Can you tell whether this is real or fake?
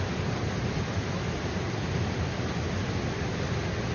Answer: real